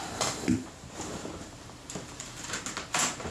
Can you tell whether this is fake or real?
fake